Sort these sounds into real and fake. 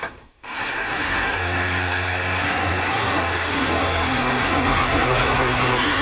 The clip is fake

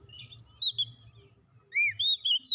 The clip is real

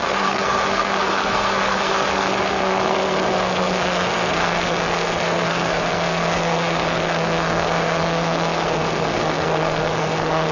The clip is fake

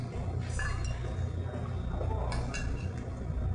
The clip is real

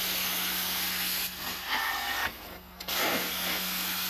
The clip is fake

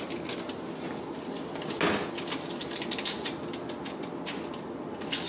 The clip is real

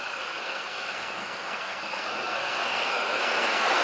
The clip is fake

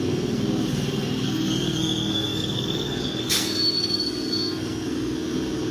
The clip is fake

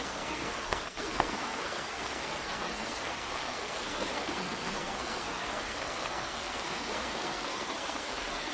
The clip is fake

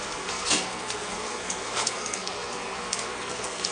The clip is fake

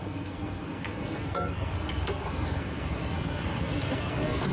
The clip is fake